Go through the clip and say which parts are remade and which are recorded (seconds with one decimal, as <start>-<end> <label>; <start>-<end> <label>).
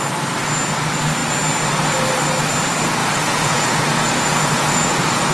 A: 0.0-3.0 recorded; 3.0-5.3 remade